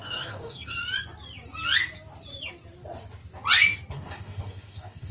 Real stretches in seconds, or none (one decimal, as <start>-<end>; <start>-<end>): 0.8-3.9

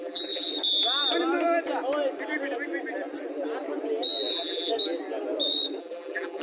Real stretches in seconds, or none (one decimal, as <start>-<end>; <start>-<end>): 0.5-4.3; 4.7-5.8